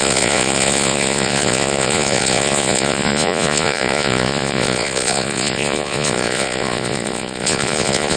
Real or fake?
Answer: fake